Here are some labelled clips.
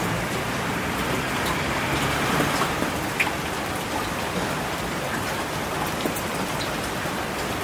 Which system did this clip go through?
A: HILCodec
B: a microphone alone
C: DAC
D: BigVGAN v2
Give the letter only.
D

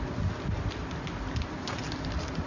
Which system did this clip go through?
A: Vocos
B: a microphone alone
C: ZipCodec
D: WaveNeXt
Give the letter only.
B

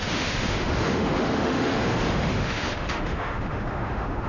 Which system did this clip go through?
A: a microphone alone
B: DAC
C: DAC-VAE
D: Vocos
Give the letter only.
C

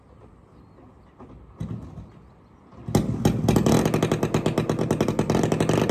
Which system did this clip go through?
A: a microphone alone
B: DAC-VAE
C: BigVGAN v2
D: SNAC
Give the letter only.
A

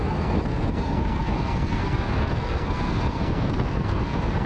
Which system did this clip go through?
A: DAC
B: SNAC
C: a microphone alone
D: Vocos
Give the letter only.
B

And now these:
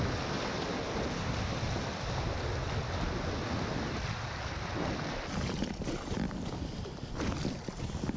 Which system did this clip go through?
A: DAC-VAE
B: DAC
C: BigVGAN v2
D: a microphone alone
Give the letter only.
D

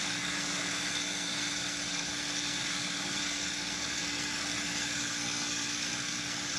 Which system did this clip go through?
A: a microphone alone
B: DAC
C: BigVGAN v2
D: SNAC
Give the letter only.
D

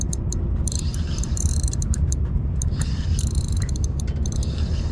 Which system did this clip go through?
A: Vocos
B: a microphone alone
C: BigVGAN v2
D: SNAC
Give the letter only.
C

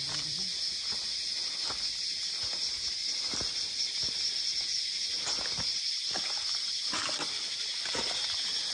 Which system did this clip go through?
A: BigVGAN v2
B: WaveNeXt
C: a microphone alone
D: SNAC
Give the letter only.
C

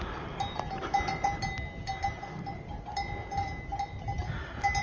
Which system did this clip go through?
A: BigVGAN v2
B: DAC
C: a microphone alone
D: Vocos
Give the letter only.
C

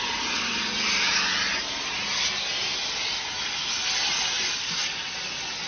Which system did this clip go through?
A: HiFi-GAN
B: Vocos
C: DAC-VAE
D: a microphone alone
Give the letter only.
D